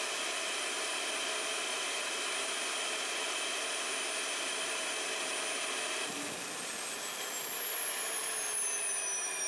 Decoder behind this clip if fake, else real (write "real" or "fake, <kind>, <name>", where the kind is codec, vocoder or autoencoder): real